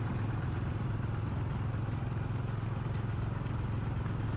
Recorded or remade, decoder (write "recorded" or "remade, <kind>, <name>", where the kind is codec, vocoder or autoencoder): recorded